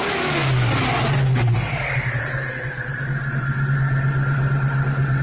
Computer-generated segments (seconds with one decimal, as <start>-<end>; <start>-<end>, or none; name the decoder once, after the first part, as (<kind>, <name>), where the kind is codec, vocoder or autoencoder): none

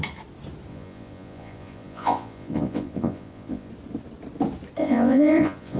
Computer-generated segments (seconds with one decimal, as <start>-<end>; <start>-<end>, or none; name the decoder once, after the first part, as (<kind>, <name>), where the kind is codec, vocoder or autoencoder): 0.7-3.7 (vocoder, Vocos); 4.8-5.8